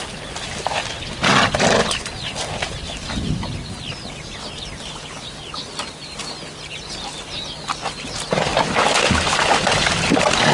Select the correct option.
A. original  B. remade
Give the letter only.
A